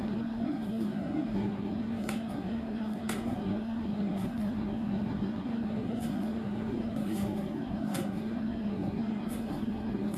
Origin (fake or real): fake